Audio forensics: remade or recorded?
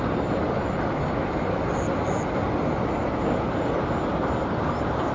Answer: recorded